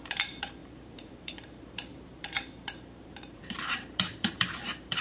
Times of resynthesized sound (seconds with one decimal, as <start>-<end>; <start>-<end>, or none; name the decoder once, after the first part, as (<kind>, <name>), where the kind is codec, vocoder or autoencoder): 0.0-5.0 (vocoder, BigVGAN v2)